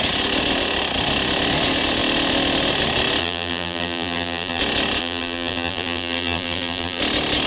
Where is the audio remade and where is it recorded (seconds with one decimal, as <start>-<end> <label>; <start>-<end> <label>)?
0.0-3.2 recorded; 3.2-4.6 remade; 4.6-5.0 recorded; 5.0-7.0 remade; 7.0-7.5 recorded